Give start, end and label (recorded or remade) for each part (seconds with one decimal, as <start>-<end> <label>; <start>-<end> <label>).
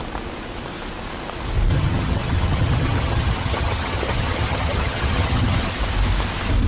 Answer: 0.0-1.7 recorded; 1.7-5.7 remade; 5.7-6.7 recorded